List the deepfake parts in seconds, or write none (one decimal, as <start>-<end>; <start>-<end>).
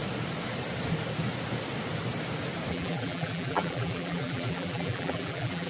2.7-5.7